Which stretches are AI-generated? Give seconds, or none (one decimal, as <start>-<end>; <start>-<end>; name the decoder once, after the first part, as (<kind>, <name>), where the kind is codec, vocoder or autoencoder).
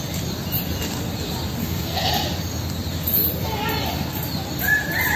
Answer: 1.6-2.1 (codec, SNAC)